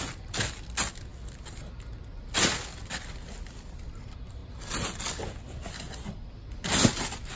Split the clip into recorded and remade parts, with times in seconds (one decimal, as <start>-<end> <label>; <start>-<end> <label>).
0.0-7.4 recorded